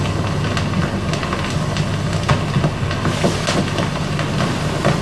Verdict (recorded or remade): recorded